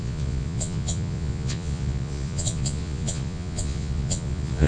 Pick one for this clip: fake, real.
fake